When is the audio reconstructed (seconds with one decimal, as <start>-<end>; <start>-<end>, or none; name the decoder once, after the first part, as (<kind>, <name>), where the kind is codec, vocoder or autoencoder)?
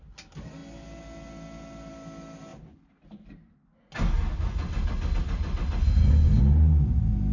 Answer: none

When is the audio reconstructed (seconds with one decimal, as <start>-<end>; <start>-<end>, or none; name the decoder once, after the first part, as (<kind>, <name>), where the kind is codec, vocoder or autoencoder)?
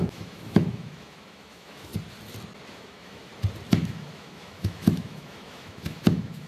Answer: 0.0-1.9 (autoencoder, DAC-VAE); 2.7-3.3; 3.8-6.5